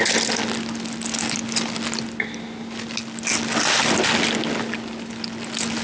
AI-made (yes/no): no